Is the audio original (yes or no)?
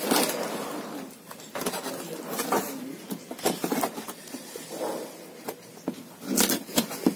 yes